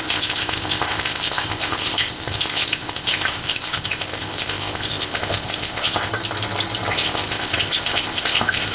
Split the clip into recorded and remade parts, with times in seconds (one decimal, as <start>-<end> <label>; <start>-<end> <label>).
0.0-6.1 remade; 6.1-6.9 recorded; 6.9-8.7 remade